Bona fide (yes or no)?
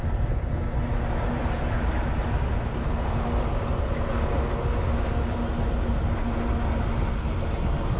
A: yes